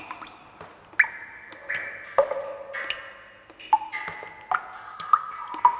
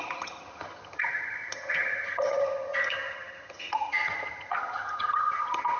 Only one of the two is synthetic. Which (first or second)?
second